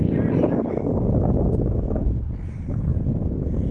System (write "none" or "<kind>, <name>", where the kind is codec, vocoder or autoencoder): vocoder, BigVGAN v2